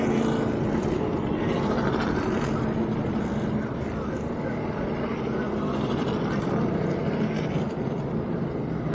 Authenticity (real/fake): real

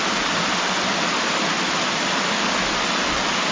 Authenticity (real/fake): real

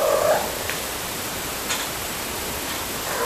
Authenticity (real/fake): real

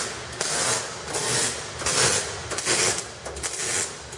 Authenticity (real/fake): real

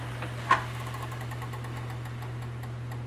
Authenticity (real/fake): real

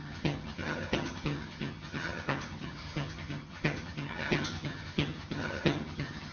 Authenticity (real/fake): fake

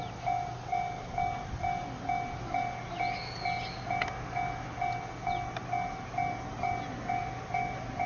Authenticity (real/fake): real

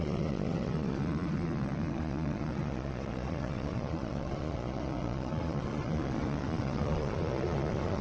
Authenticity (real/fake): fake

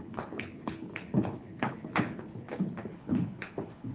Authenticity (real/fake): fake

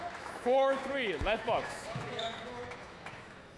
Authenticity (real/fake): fake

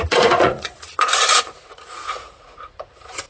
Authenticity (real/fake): fake